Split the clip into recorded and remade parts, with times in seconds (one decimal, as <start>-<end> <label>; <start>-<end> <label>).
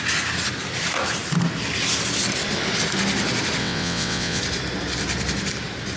0.0-3.6 recorded; 3.6-4.4 remade; 4.4-6.0 recorded